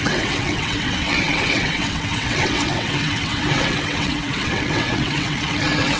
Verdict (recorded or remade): remade